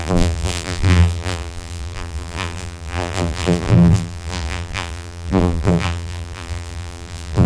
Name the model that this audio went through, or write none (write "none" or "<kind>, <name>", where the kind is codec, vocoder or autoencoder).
vocoder, BigVGAN v2